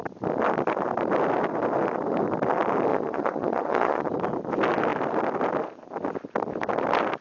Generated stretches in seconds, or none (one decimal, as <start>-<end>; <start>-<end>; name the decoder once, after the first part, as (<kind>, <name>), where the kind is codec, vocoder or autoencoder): 2.9-4.1 (vocoder, Vocos)